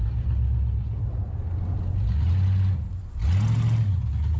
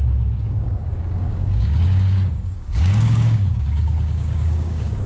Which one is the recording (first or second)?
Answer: first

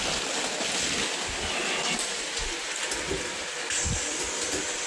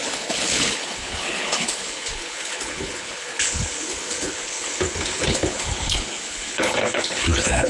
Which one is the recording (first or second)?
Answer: first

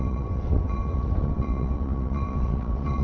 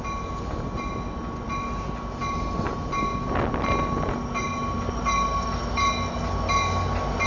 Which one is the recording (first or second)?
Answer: second